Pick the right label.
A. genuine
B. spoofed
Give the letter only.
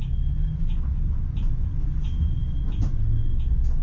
A